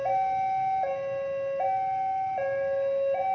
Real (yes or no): yes